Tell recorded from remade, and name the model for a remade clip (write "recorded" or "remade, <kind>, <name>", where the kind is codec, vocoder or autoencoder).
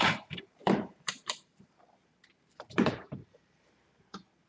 remade, vocoder, BigVGAN v2